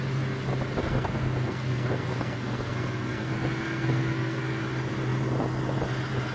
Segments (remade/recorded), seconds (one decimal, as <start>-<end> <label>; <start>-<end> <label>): 0.0-0.8 recorded; 0.8-4.6 remade; 4.6-6.3 recorded